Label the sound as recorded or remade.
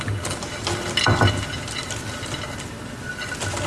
recorded